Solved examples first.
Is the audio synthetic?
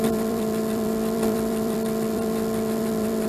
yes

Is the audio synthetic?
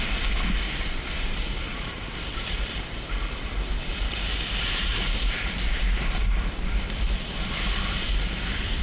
yes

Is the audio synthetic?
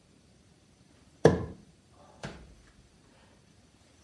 yes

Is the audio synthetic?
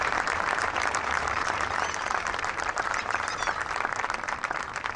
yes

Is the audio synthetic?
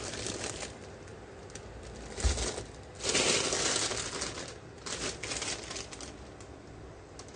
no